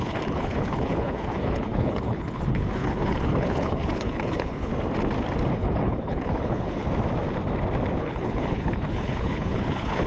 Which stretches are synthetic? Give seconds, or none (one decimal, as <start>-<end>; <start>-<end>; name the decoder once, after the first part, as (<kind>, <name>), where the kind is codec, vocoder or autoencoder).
0.0-4.7 (codec, HILCodec); 5.5-6.8; 8.0-10.1